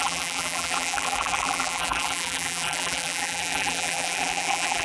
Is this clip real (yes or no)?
no